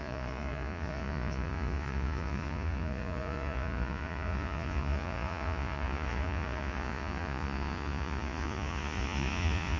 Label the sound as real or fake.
fake